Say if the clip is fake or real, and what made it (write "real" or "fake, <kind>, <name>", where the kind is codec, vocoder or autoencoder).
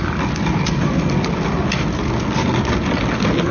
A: real